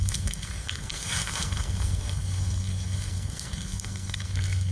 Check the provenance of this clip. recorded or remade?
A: remade